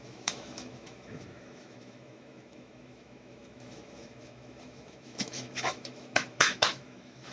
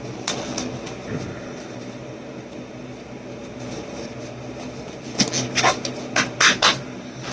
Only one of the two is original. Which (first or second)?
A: second